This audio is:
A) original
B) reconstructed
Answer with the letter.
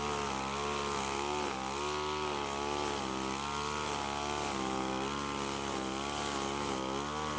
A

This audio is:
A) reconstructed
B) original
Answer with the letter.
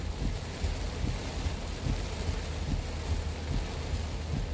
B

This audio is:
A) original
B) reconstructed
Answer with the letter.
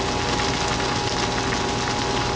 A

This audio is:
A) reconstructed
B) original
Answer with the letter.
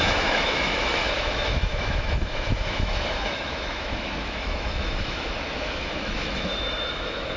A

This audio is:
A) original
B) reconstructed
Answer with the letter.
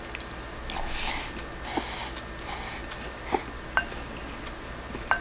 A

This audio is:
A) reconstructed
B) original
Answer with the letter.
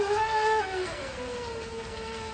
A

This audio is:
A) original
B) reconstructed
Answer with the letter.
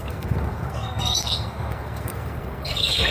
B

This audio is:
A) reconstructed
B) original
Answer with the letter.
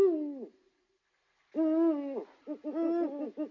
B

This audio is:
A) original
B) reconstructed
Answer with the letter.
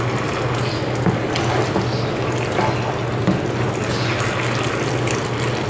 A